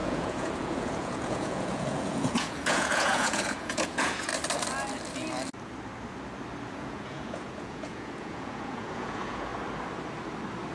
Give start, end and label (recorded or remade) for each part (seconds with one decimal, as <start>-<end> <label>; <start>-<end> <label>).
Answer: 0.0-4.3 remade; 4.3-6.7 recorded; 6.7-9.5 remade; 9.5-10.7 recorded